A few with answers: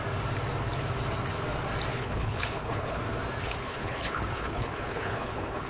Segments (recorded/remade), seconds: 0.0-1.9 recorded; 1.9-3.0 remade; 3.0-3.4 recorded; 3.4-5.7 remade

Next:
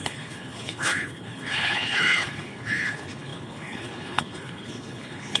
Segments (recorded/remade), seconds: 0.0-5.4 remade

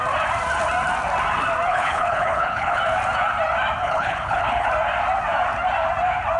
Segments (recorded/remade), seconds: 0.0-1.7 recorded; 1.7-2.8 remade; 2.8-3.8 recorded; 3.8-4.7 remade; 4.7-6.4 recorded

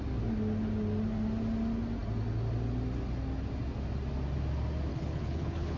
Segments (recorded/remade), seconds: 0.0-4.9 recorded; 4.9-5.8 remade

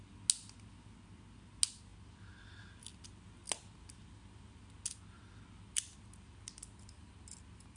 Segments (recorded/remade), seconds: 0.0-7.8 recorded

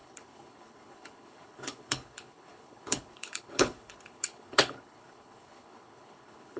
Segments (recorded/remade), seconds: 0.0-6.6 remade

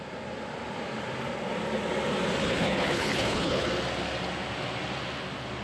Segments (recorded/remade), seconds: 0.0-2.4 recorded; 2.4-3.7 remade; 3.7-5.6 recorded

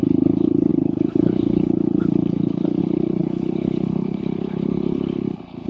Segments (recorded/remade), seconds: 0.0-5.7 remade